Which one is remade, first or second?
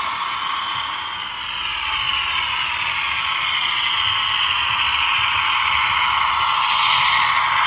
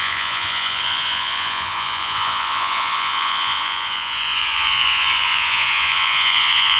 second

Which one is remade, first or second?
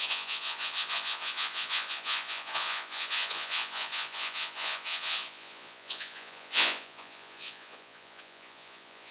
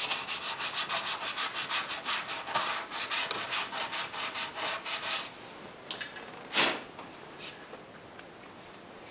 first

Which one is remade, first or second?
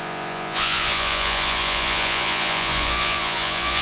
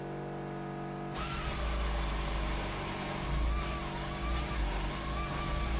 first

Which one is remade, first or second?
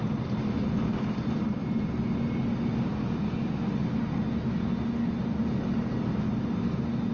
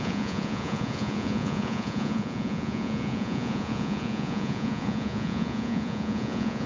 second